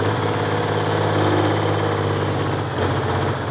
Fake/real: real